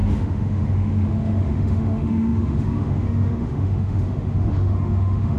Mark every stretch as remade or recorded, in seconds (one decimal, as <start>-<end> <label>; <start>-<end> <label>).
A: 0.0-5.4 remade